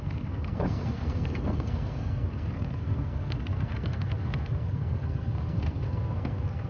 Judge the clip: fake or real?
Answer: fake